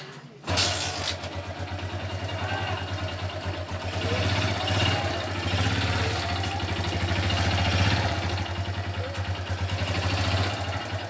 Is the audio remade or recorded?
recorded